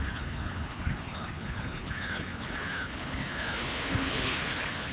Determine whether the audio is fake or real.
fake